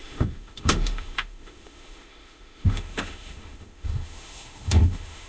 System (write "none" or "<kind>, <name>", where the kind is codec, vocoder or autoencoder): autoencoder, DAC-VAE